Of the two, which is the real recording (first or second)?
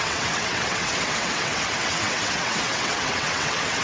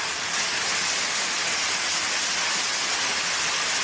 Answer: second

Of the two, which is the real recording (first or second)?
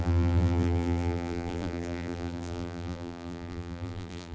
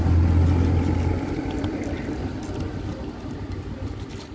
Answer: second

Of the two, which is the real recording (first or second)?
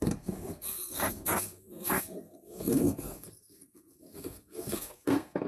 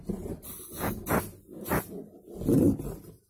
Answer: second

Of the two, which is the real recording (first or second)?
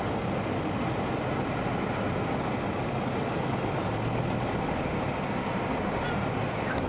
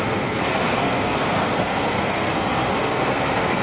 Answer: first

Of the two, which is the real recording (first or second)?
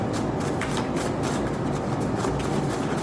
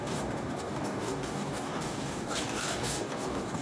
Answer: first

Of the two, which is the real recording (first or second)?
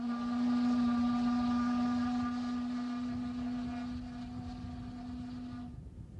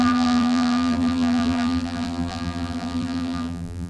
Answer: first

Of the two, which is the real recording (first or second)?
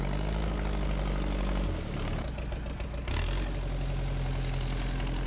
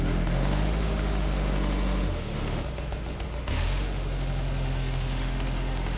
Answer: first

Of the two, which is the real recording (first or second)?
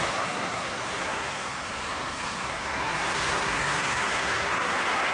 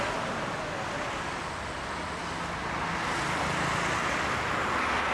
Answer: second